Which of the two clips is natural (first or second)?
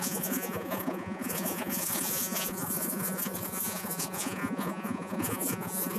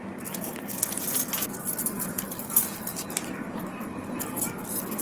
second